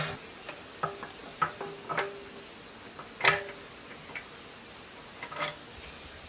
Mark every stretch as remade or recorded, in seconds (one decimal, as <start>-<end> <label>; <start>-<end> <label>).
0.0-6.3 recorded